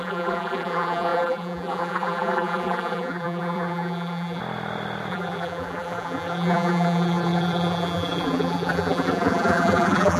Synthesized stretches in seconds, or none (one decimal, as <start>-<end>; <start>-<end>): 0.0-4.4; 5.1-10.2